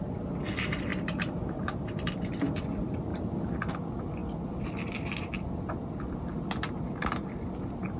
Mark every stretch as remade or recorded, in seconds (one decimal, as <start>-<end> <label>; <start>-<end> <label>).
0.0-0.9 recorded; 0.9-2.1 remade; 2.1-8.0 recorded